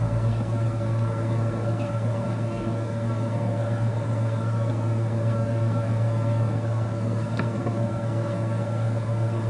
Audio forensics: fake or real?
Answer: fake